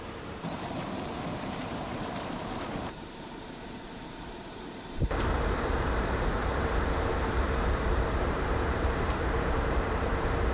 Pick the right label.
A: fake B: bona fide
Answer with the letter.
A